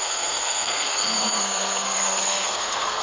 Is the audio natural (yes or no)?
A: no